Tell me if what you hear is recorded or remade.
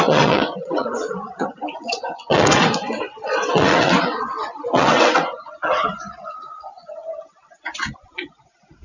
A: remade